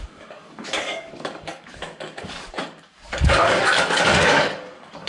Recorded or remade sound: remade